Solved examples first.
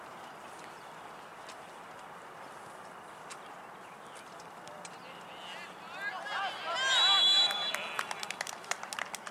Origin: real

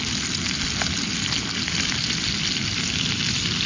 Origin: real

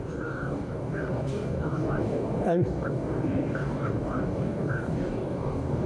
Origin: fake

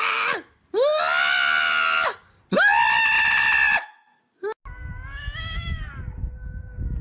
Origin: real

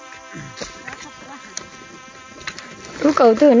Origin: real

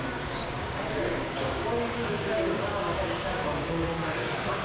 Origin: fake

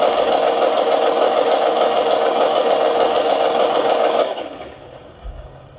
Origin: fake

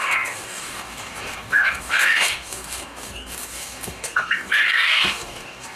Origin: fake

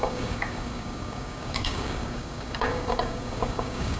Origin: fake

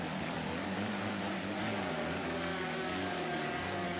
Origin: fake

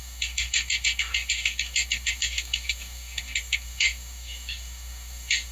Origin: fake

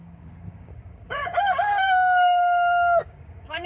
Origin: fake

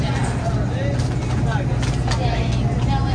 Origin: real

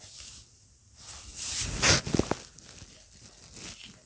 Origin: real